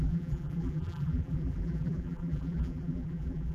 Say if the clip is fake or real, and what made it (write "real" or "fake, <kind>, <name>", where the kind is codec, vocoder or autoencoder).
fake, vocoder, BigVGAN v2